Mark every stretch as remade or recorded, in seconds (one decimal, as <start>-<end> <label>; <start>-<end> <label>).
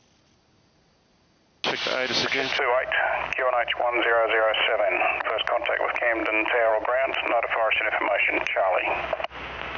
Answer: 0.0-9.8 recorded